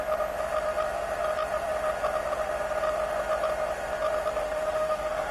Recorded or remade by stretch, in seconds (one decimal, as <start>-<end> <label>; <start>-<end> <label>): 0.0-4.4 recorded; 4.4-5.3 remade